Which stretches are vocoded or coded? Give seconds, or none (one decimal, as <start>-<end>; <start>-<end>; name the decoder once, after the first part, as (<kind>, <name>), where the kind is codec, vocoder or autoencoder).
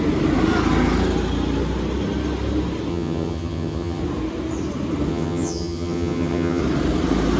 2.9-4.0 (vocoder, HiFi-GAN); 5.1-6.6